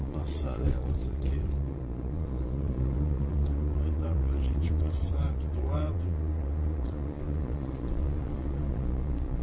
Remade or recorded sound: remade